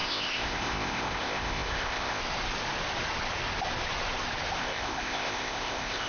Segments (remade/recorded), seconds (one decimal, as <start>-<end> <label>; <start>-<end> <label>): 0.0-2.2 remade; 2.2-4.6 recorded; 4.6-6.1 remade